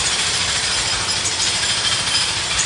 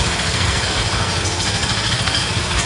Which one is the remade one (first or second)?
second